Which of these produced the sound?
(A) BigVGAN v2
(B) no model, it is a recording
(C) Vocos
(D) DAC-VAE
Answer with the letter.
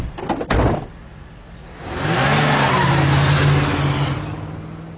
B